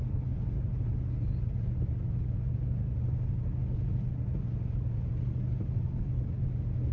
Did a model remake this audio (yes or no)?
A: no